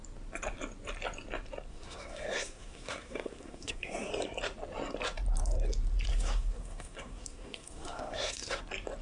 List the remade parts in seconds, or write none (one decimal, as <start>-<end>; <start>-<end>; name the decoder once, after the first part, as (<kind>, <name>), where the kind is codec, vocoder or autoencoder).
1.7-4.1 (codec, SNAC); 6.1-8.6